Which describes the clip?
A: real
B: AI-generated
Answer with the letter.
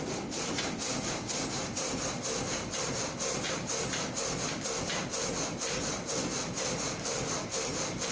A